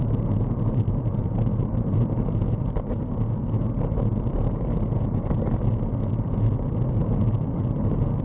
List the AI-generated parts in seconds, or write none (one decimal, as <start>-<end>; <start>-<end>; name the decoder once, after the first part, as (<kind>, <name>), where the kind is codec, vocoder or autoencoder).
none